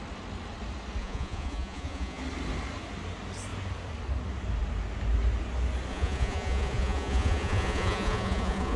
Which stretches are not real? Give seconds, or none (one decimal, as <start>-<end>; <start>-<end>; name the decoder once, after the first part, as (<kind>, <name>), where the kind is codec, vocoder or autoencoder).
1.0-2.2 (vocoder, Vocos); 5.9-8.8

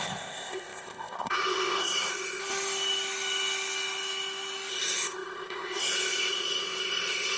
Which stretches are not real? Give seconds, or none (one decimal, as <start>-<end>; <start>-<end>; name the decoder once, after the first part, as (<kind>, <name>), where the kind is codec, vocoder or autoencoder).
0.0-2.4 (codec, ZipCodec); 4.7-7.4

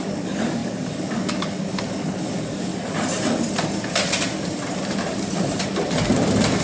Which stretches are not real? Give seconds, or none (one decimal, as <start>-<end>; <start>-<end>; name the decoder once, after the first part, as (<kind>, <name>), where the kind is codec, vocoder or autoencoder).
0.0-2.7 (codec, DAC)

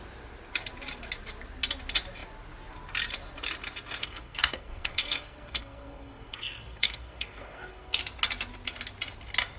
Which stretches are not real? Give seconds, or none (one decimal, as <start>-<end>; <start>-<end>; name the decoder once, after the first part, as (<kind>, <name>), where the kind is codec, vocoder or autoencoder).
4.0-8.0 (codec, SNAC)

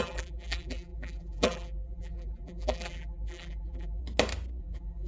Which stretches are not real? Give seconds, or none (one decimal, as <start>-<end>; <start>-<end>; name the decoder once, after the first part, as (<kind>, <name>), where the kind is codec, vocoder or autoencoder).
0.0-4.0 (vocoder, BigVGAN v2); 4.6-5.1